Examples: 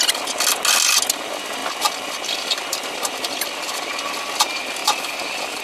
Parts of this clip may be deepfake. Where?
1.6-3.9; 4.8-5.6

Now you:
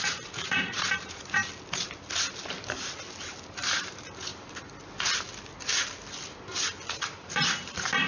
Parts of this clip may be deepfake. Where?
0.0-1.4; 3.1-4.3; 7.0-8.1

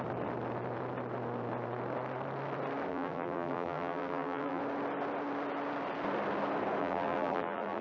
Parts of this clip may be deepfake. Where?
2.9-4.6; 6.8-7.8